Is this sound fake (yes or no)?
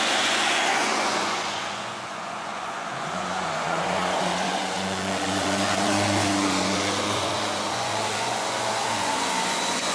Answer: yes